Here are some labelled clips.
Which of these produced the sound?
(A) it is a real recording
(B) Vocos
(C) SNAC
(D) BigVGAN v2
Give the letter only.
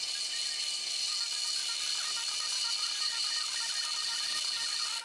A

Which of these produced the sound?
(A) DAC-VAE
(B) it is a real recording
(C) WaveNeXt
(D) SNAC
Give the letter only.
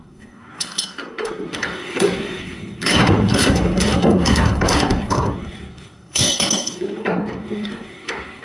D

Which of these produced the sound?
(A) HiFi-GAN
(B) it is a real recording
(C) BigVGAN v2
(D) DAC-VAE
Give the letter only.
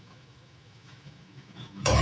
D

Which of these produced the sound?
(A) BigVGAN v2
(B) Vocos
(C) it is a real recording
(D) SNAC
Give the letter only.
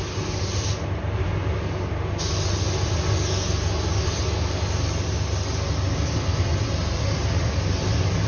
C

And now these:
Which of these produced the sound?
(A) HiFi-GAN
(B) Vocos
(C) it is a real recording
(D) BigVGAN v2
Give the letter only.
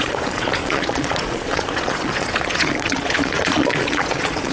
B